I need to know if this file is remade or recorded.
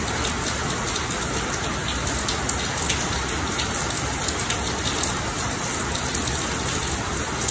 recorded